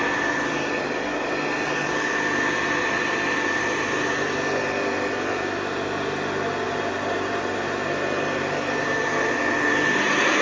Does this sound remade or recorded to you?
recorded